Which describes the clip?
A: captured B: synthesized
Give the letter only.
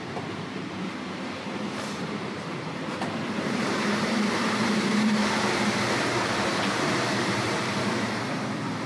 B